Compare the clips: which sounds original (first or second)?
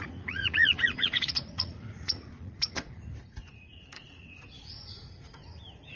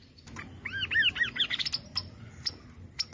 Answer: second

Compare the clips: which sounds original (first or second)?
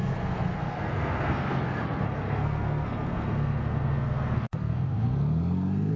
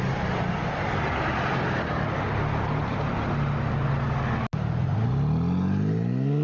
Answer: second